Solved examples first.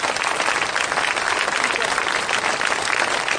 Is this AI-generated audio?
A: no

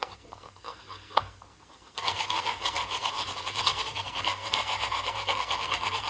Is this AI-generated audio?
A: yes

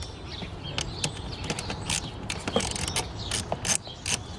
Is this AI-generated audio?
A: no